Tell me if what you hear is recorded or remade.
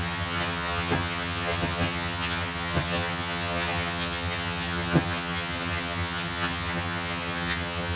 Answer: remade